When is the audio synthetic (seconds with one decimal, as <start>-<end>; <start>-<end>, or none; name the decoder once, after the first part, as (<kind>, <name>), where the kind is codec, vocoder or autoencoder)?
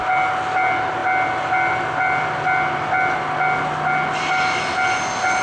none